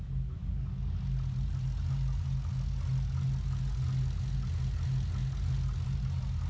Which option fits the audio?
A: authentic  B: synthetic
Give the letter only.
A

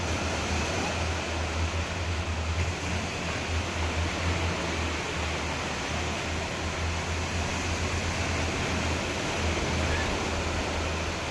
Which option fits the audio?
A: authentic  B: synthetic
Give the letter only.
A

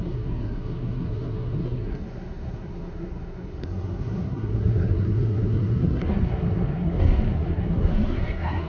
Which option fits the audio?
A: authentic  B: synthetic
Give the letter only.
B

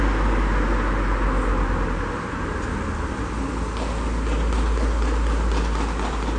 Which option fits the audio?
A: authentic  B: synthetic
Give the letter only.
A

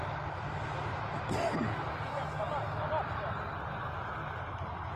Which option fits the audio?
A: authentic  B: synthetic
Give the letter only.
A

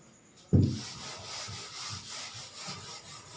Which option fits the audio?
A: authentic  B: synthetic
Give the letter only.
A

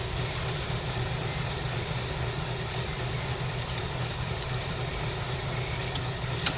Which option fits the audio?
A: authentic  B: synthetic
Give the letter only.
B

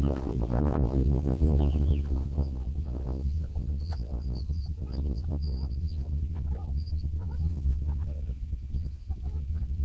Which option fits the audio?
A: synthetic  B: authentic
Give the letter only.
A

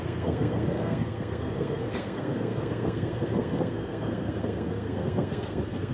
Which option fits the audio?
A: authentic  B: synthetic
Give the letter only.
B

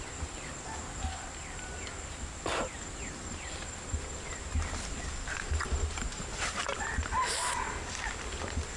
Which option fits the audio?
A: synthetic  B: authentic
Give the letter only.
B